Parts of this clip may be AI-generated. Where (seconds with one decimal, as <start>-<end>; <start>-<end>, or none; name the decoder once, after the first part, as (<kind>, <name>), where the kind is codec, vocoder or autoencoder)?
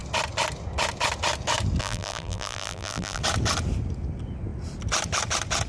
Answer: 1.8-3.2 (vocoder, BigVGAN v2)